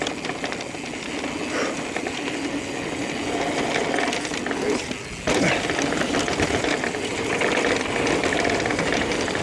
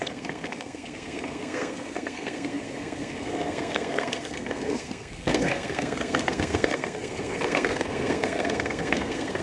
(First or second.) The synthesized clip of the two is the second